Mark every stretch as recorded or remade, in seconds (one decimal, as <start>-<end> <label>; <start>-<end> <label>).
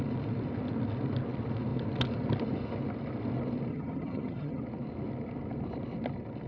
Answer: 0.0-3.7 recorded; 3.7-4.6 remade; 4.6-6.5 recorded